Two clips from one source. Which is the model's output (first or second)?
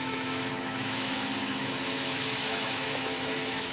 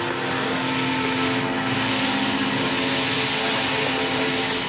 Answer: first